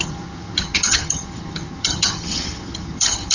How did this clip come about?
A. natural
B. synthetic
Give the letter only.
B